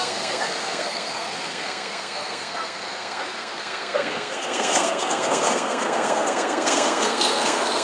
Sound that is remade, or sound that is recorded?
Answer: remade